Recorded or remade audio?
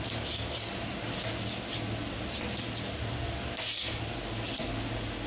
recorded